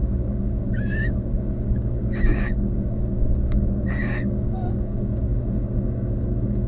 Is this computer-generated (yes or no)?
yes